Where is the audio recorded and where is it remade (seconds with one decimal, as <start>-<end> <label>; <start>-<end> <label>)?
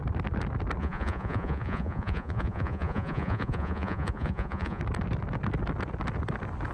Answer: 0.0-0.8 recorded; 0.8-4.8 remade; 4.8-6.7 recorded